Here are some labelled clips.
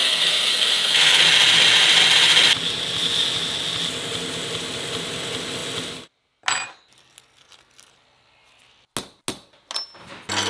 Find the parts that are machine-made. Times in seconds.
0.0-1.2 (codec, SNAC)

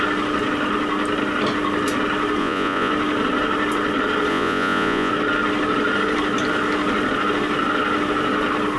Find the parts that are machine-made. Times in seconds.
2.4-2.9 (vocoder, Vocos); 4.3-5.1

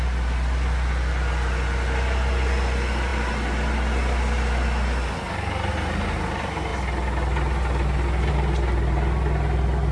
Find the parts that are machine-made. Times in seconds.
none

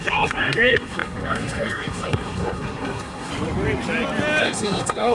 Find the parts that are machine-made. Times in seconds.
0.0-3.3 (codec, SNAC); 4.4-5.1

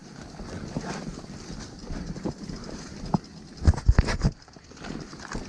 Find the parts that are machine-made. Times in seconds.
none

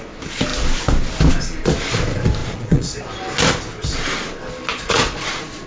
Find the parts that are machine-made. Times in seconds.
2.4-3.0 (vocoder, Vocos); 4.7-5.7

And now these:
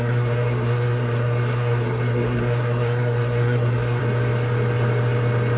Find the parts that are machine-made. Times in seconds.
0.0-4.0 (codec, SNAC)